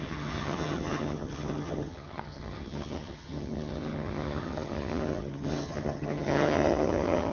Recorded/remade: remade